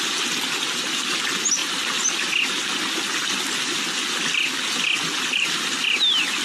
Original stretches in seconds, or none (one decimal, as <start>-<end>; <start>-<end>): 0.0-6.4